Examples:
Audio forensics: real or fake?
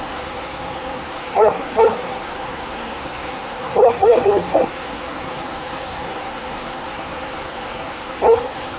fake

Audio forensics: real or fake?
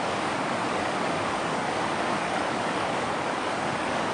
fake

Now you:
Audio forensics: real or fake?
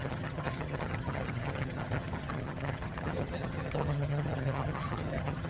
fake